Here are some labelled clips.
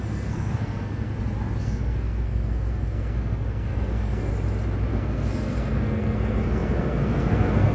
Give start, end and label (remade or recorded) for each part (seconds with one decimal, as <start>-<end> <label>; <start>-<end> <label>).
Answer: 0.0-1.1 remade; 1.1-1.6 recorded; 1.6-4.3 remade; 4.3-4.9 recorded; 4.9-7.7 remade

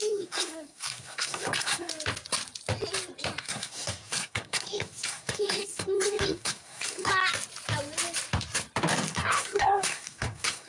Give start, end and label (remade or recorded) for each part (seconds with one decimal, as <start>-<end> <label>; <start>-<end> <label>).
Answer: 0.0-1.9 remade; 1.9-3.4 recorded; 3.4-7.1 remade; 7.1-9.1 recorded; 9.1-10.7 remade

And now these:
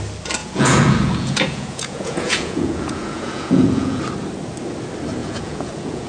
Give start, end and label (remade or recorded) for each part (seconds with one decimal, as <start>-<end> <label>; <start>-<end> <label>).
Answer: 0.0-0.4 recorded; 0.4-4.0 remade; 4.0-5.2 recorded; 5.2-6.1 remade

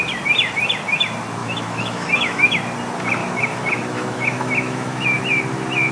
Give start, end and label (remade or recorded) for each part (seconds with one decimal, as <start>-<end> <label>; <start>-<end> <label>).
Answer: 0.0-1.4 recorded; 1.4-2.6 remade; 2.6-3.2 recorded; 3.2-5.2 remade; 5.2-5.9 recorded

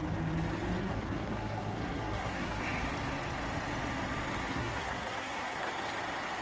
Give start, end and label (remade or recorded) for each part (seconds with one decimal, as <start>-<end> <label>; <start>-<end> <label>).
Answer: 0.0-0.8 recorded; 0.8-2.6 remade; 2.6-4.4 recorded; 4.4-5.7 remade; 5.7-6.4 recorded

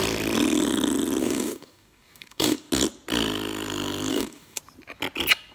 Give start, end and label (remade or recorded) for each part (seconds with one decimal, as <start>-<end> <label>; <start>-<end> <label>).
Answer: 0.0-1.2 recorded; 1.2-2.7 remade; 2.7-4.1 recorded; 4.1-4.6 remade; 4.6-5.5 recorded

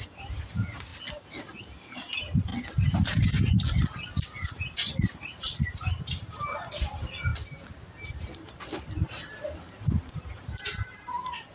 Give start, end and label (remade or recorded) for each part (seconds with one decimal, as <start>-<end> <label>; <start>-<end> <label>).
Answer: 0.0-0.9 remade; 0.9-1.6 recorded; 1.6-2.5 remade; 2.5-3.8 recorded; 3.8-7.3 remade; 7.3-8.2 recorded; 8.2-9.0 remade; 9.0-10.0 recorded; 10.0-11.5 remade